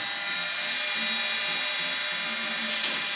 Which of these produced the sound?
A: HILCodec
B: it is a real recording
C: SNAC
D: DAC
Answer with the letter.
B